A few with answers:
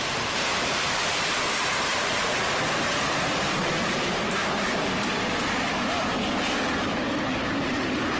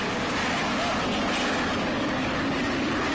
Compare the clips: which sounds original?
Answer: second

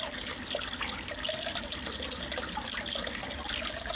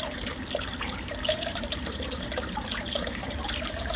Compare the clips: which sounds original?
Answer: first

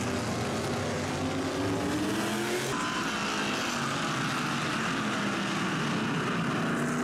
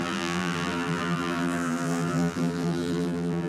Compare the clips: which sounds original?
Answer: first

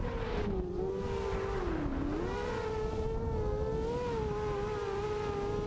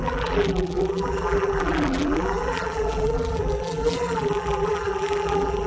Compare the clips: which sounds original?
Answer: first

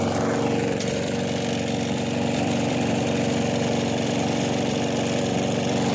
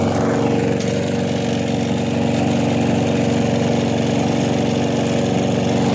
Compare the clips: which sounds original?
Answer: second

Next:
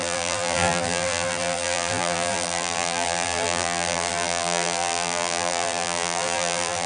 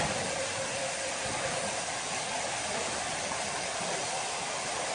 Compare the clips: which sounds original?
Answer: second